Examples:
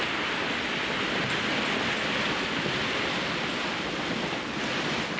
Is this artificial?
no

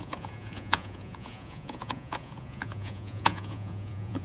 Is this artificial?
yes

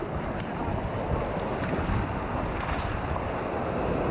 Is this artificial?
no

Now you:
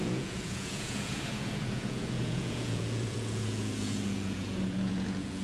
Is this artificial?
yes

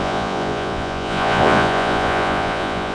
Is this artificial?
yes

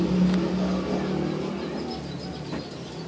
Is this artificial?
no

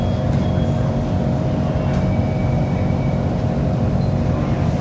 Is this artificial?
no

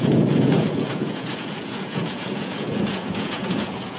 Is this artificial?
yes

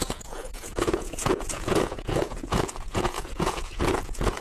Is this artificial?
yes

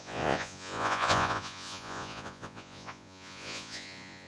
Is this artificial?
yes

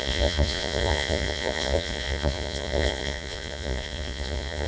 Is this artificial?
yes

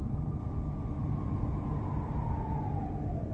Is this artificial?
no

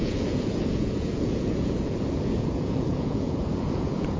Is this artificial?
yes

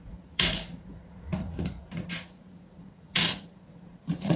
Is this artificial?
yes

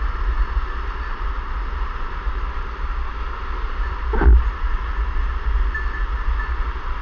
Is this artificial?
no